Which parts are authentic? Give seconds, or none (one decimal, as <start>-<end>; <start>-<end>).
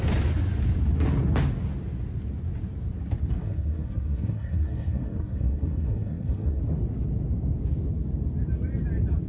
0.0-3.4; 6.6-9.3